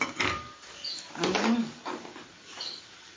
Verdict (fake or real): fake